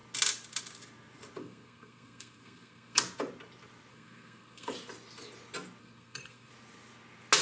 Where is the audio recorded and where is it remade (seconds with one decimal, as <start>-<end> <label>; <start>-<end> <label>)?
0.0-1.4 recorded; 1.4-3.0 remade; 3.0-3.9 recorded; 3.9-4.7 remade; 4.7-5.8 recorded; 5.8-6.5 remade; 6.5-7.4 recorded